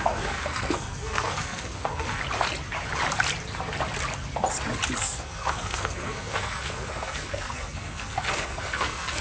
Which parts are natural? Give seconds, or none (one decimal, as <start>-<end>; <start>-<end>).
2.2-5.0